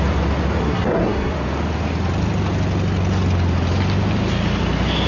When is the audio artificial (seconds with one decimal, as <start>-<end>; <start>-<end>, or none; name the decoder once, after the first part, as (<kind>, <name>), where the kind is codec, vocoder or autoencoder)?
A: 0.6-1.3 (codec, SNAC)